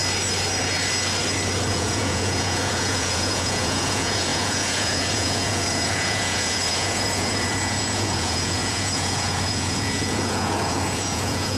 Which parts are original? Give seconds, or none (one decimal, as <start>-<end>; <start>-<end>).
0.0-1.7